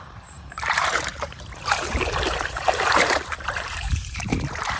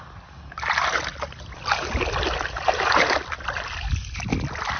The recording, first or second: second